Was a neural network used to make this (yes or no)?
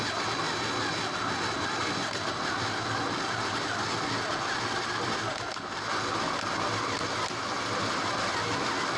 no